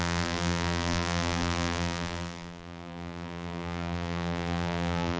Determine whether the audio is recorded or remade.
remade